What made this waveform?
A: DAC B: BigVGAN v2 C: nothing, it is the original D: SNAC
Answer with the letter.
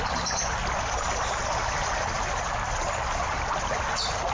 C